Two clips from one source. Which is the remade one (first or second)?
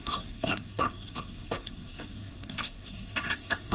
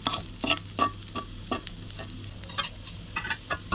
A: first